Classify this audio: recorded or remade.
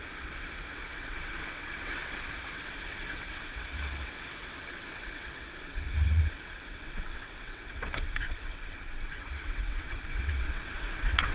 remade